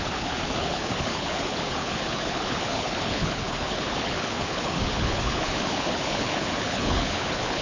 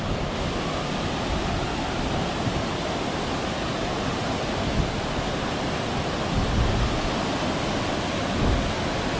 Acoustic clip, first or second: second